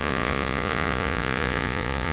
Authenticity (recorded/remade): remade